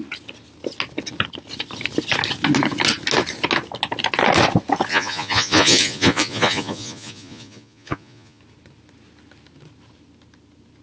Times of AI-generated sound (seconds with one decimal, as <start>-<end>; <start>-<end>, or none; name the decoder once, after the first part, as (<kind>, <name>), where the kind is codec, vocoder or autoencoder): 4.9-8.4 (vocoder, Vocos)